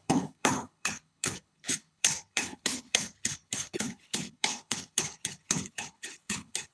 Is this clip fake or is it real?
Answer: fake